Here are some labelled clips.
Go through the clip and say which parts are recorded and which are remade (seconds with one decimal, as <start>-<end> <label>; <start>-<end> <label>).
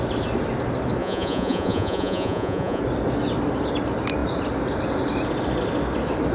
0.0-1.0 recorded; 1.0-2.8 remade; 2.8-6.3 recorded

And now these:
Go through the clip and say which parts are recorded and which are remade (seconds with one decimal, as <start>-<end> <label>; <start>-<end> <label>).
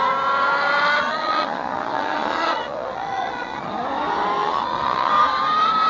0.0-1.0 recorded; 1.0-3.8 remade; 3.8-4.4 recorded; 4.4-5.1 remade; 5.1-5.9 recorded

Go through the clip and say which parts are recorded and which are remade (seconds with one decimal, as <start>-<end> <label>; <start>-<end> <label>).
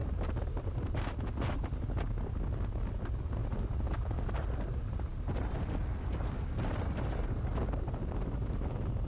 0.0-9.1 recorded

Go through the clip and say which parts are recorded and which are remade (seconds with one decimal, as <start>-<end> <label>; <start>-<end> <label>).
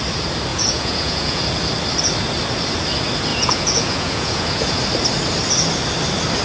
0.0-0.5 recorded; 0.5-1.4 remade; 1.4-3.3 recorded; 3.3-4.8 remade; 4.8-6.4 recorded